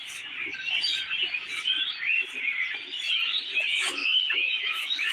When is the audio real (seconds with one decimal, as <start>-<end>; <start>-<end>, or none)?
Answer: 0.0-4.0